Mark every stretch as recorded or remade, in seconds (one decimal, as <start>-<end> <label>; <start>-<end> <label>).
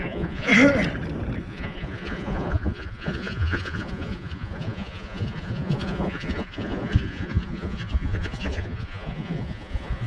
0.0-0.5 remade; 0.5-1.4 recorded; 1.4-10.1 remade